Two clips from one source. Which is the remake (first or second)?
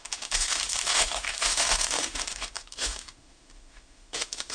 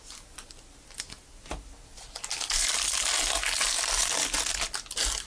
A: first